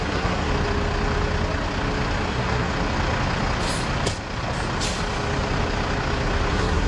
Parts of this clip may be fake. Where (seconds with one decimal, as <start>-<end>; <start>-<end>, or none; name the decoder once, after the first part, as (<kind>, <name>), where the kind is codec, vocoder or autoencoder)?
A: 0.0-0.5 (codec, SNAC); 2.3-2.7; 6.5-6.9